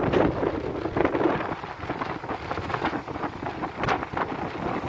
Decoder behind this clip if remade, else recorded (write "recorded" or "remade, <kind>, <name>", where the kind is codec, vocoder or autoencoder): recorded